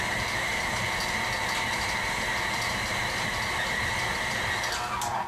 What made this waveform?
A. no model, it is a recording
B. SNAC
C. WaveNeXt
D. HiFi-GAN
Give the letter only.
A